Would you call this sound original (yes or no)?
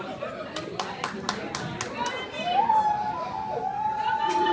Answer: yes